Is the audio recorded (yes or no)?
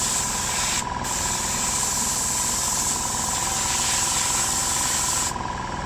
yes